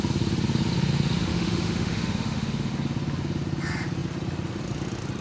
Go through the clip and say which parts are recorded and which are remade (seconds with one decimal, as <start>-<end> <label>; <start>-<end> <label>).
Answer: 0.0-1.3 recorded; 1.3-2.7 remade; 2.7-5.2 recorded